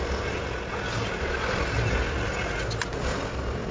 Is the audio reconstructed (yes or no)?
no